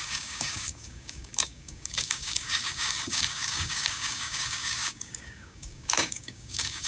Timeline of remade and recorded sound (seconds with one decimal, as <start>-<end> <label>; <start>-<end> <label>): 0.0-6.9 remade